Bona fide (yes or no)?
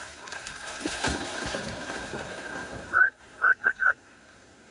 no